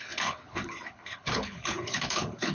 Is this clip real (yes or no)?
no